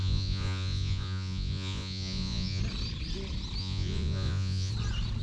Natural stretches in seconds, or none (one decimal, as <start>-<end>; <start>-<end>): 2.6-3.6; 4.7-5.2